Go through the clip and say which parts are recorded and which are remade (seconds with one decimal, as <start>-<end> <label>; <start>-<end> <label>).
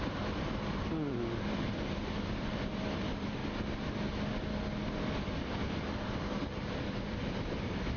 0.0-3.4 remade; 3.4-5.9 recorded; 5.9-8.0 remade